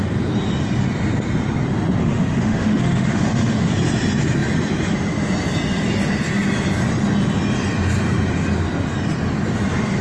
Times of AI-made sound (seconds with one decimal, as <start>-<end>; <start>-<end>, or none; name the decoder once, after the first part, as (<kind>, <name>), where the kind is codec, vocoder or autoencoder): 2.0-3.7 (autoencoder, DAC-VAE)